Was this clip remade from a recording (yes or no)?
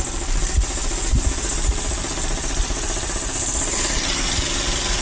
no